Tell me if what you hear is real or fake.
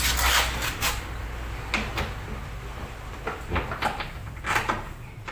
real